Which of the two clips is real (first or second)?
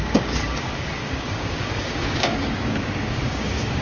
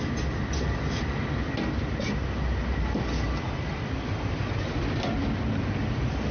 second